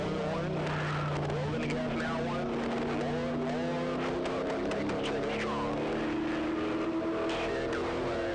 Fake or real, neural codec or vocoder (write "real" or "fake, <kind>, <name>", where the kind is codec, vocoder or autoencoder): real